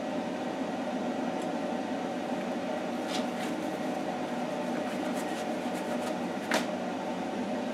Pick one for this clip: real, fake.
real